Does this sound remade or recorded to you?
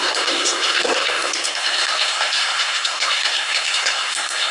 remade